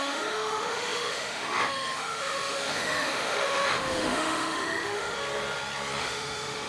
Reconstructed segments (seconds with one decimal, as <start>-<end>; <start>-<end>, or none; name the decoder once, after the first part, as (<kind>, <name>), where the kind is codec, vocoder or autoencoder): 0.0-5.2 (autoencoder, DAC-VAE); 6.0-6.7